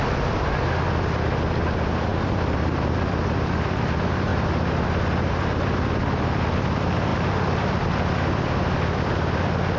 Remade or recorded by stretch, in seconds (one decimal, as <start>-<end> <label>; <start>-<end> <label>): 0.0-9.8 remade